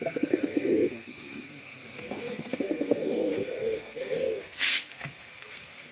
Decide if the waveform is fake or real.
fake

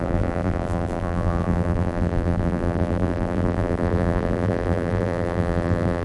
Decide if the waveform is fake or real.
fake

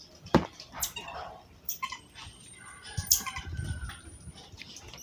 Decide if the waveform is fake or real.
fake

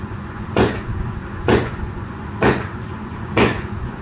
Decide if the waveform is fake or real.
fake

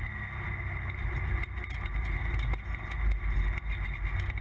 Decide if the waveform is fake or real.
real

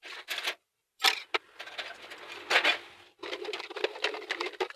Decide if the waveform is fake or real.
real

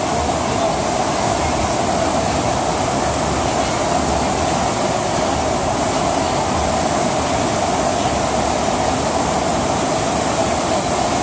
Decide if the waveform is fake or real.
real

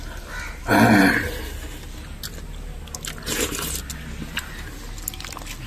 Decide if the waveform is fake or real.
real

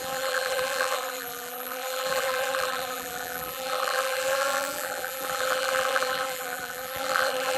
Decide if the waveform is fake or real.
fake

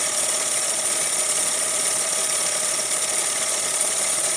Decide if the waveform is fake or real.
fake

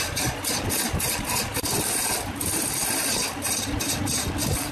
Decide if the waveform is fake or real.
real